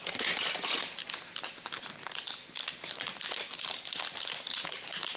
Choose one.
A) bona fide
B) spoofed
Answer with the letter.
B